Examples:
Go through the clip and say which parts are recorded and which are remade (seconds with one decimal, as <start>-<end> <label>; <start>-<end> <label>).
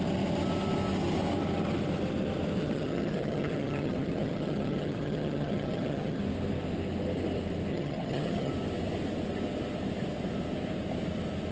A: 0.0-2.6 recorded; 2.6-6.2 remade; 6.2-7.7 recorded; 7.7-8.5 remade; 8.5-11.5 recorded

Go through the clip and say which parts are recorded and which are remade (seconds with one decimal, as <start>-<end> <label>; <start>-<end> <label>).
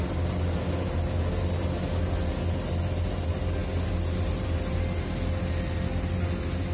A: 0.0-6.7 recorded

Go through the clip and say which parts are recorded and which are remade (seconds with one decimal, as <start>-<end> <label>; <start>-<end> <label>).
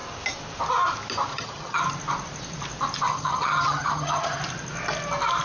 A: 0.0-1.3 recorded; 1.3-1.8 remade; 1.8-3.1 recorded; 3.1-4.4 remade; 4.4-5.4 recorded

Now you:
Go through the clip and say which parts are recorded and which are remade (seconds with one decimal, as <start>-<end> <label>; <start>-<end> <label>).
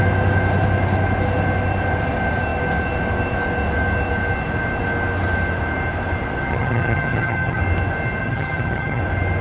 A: 0.0-6.5 recorded; 6.5-7.6 remade; 7.6-8.2 recorded; 8.2-9.0 remade; 9.0-9.4 recorded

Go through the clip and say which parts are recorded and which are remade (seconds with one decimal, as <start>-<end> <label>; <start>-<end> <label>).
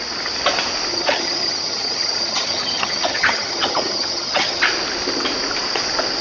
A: 0.0-0.9 recorded; 0.9-4.6 remade; 4.6-6.2 recorded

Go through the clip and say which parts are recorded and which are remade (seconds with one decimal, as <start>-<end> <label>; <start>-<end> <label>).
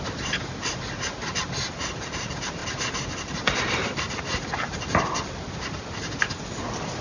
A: 0.0-7.0 recorded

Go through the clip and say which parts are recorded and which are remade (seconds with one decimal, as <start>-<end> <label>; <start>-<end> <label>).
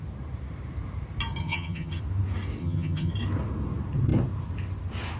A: 0.0-1.4 recorded; 1.4-2.0 remade; 2.0-2.6 recorded; 2.6-3.1 remade; 3.1-5.2 recorded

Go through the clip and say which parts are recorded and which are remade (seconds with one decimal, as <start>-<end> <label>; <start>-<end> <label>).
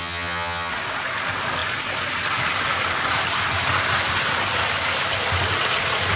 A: 0.0-0.7 remade; 0.7-6.2 recorded